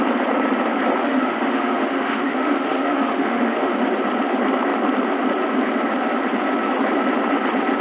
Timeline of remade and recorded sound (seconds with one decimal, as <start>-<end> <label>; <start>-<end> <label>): 0.0-1.0 recorded; 1.0-3.7 remade; 3.7-7.8 recorded